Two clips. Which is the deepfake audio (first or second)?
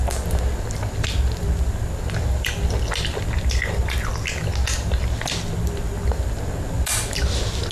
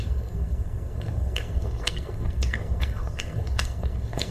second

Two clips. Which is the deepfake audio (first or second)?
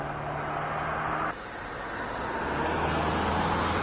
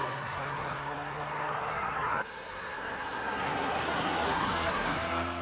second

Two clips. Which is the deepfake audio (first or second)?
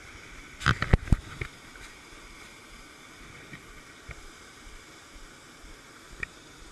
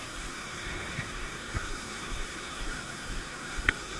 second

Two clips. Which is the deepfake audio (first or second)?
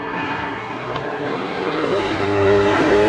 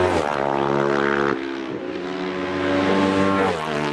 first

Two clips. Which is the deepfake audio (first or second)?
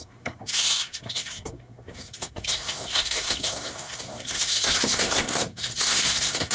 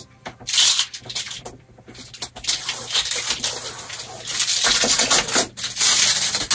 first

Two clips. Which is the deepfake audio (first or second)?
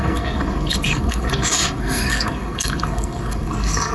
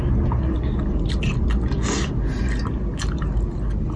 first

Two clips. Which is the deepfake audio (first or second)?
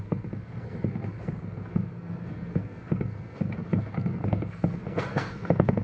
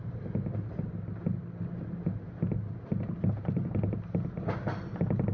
first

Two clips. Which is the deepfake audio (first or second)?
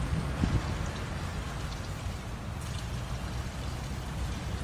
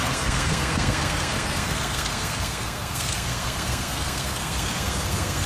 second